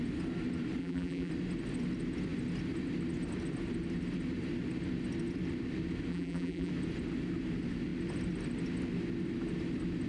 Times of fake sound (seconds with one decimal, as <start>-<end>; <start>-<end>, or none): 0.8-1.3; 6.1-6.7